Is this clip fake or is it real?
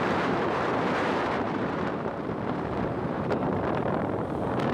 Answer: fake